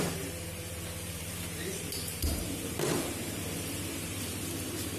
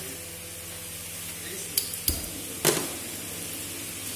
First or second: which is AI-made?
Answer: first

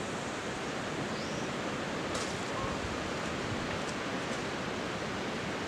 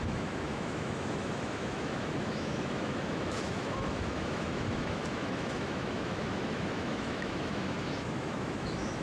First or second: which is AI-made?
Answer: second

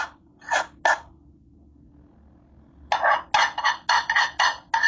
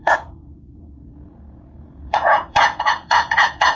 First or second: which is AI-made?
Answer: second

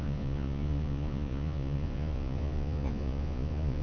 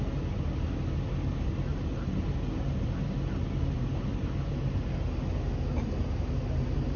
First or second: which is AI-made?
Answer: first